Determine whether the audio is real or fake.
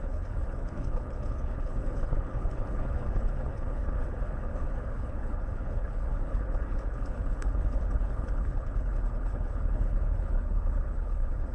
fake